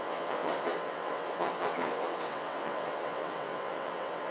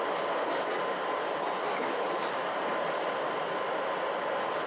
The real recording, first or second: second